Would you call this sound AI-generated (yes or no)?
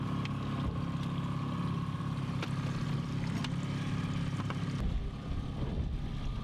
no